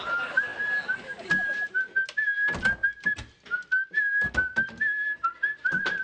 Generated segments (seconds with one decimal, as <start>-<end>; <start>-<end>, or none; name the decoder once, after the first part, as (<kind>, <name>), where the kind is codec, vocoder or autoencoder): none